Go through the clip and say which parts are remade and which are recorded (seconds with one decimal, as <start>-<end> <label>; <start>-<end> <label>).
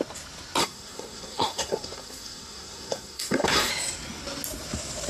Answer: 0.0-0.6 recorded; 0.6-3.7 remade; 3.7-5.1 recorded